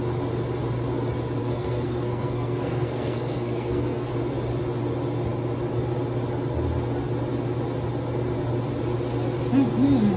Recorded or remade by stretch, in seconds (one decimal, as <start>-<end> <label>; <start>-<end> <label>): 0.0-1.4 recorded; 1.4-4.1 remade; 4.1-10.2 recorded

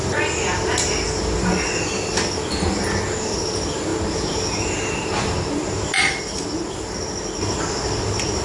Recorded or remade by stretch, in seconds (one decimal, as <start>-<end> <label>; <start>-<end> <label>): 0.0-8.4 recorded

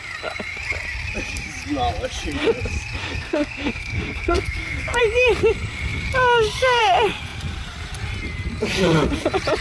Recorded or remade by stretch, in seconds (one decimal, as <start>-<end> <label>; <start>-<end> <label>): 0.0-3.0 recorded; 3.0-5.0 remade; 5.0-9.6 recorded